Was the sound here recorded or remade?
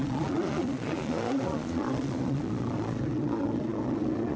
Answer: remade